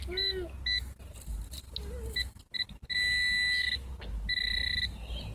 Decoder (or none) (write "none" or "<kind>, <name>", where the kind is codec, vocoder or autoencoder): none